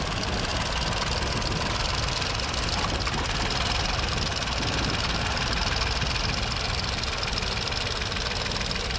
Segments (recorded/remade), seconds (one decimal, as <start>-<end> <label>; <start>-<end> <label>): 0.0-9.0 recorded